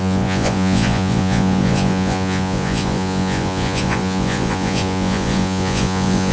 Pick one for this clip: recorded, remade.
remade